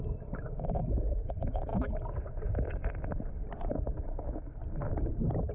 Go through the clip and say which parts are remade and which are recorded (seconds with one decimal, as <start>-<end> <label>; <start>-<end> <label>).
0.0-5.5 recorded

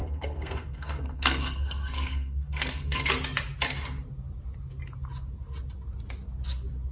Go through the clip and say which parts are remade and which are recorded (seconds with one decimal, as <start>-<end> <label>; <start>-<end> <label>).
0.0-3.1 remade; 3.1-6.9 recorded

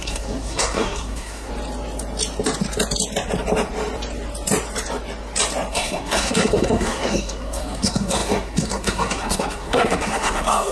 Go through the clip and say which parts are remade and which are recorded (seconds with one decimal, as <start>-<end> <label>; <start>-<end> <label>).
0.0-1.5 remade; 1.5-5.7 recorded; 5.7-10.7 remade

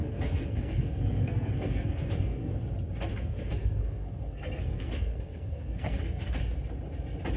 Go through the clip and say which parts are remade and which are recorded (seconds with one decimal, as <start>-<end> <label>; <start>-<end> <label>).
0.0-2.5 remade; 2.5-3.1 recorded; 3.1-6.4 remade; 6.4-7.4 recorded

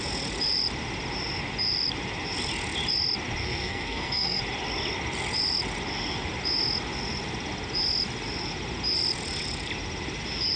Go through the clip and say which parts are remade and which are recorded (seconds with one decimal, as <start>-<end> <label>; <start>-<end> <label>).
0.0-3.4 recorded; 3.4-4.4 remade; 4.4-10.6 recorded

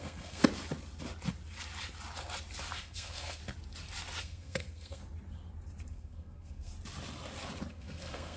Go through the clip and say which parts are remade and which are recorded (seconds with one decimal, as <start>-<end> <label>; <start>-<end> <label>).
0.0-0.4 remade; 0.4-2.8 recorded; 2.8-3.4 remade; 3.4-4.2 recorded; 4.2-5.0 remade; 5.0-5.9 recorded; 5.9-6.7 remade; 6.7-7.7 recorded; 7.7-8.4 remade